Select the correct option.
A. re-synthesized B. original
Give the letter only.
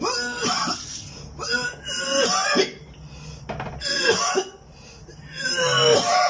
B